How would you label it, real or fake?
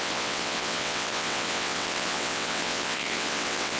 fake